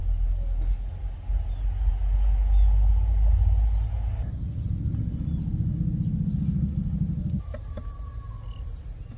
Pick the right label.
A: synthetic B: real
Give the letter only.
B